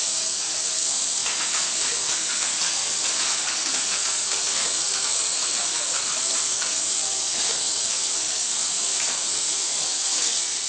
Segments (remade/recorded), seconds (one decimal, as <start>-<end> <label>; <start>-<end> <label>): 0.0-10.7 remade